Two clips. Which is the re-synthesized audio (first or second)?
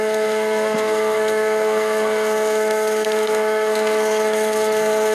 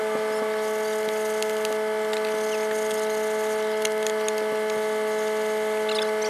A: first